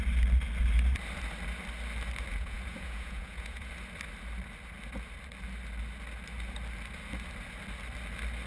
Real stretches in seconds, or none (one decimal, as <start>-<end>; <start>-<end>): 0.0-2.3; 3.7-8.5